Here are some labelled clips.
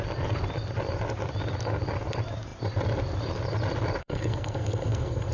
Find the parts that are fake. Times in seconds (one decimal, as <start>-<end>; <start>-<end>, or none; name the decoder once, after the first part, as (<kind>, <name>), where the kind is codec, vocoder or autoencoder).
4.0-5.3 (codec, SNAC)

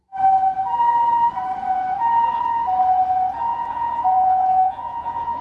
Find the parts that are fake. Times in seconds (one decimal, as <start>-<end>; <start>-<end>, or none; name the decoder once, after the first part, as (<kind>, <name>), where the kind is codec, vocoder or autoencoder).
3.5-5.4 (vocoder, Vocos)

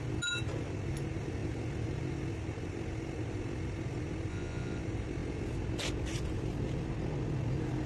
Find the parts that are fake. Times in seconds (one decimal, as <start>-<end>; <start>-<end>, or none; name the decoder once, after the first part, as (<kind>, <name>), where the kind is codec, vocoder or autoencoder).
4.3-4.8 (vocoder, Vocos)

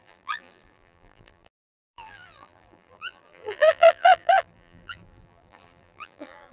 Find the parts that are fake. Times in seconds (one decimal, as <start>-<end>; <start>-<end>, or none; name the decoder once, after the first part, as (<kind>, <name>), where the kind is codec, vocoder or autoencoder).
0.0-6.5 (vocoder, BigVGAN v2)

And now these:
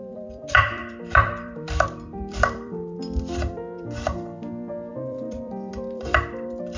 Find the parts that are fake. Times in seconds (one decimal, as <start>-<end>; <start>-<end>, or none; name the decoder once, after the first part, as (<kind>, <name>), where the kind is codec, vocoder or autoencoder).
0.0-6.8 (vocoder, BigVGAN v2)